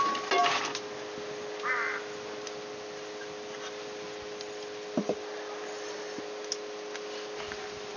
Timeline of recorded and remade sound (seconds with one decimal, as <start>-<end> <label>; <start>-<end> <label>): 0.0-8.0 recorded